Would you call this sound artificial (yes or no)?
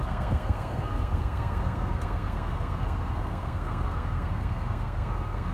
yes